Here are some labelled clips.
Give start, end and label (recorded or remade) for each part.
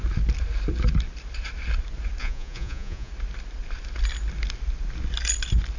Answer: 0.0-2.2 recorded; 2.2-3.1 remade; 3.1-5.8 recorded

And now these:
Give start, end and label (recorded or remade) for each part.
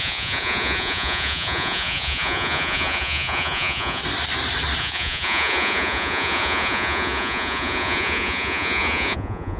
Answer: 0.0-4.0 remade; 4.0-4.8 recorded; 4.8-9.6 remade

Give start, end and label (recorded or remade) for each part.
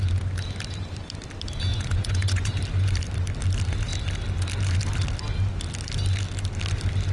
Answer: 0.0-1.7 recorded; 1.7-2.6 remade; 2.6-7.1 recorded